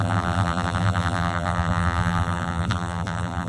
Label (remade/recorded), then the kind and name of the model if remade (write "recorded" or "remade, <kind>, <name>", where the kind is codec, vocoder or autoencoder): remade, vocoder, BigVGAN v2